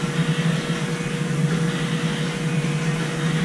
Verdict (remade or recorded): recorded